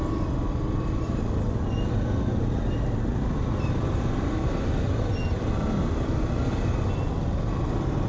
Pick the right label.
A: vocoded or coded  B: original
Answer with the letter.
B